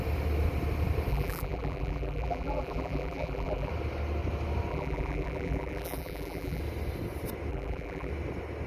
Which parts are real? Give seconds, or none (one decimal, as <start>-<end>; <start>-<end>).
0.0-1.1; 3.7-4.7; 6.6-7.5; 8.1-8.7